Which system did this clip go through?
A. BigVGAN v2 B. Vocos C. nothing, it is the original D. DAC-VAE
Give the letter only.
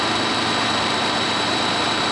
A